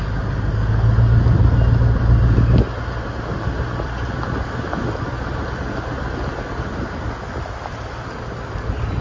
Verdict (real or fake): real